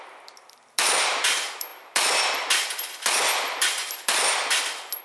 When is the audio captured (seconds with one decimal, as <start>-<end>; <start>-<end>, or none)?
0.0-5.0